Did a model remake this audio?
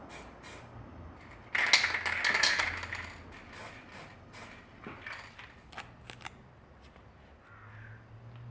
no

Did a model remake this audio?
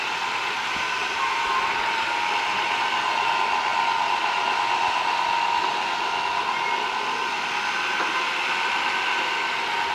no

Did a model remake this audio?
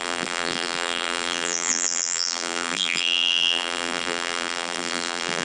yes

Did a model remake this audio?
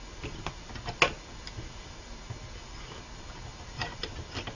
no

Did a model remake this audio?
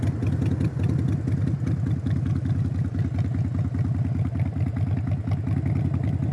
no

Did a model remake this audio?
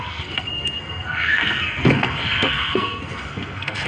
yes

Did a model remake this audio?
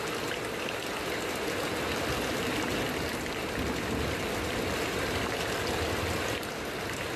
no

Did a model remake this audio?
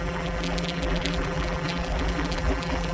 yes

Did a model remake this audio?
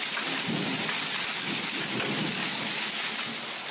no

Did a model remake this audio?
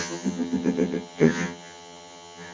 yes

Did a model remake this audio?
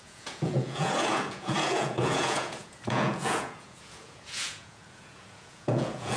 yes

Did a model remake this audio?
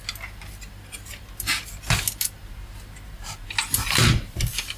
no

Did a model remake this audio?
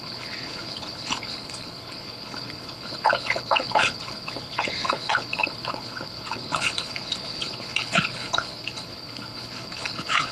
yes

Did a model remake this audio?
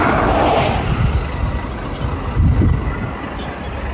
no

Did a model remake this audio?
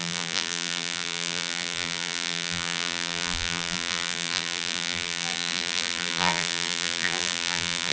yes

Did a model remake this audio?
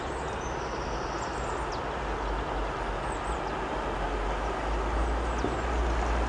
no